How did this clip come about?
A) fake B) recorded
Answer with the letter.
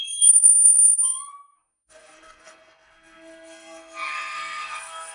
A